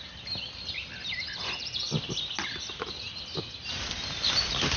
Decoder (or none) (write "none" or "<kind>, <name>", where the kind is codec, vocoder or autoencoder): none